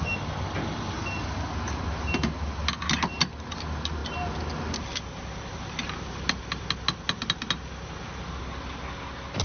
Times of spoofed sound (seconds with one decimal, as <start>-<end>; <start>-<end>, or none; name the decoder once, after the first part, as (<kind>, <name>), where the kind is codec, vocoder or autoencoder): none